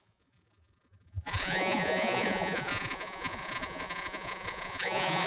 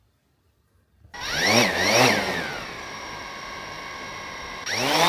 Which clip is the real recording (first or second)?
second